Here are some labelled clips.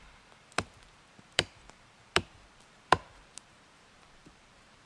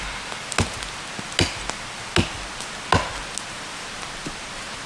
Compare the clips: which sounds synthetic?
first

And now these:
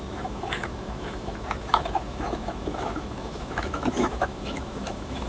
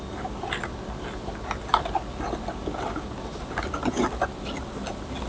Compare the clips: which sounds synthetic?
first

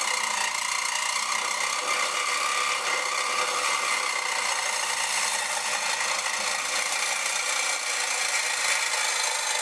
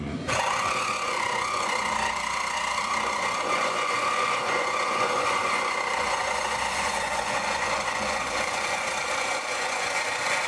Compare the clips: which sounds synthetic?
second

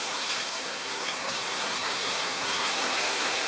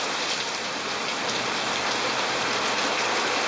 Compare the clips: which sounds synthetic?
first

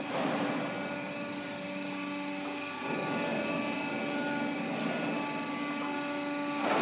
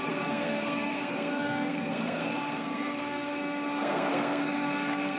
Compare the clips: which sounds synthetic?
second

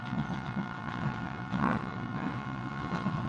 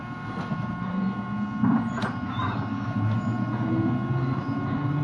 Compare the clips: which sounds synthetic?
first